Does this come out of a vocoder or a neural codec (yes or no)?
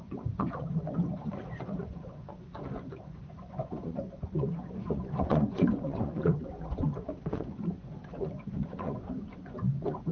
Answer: yes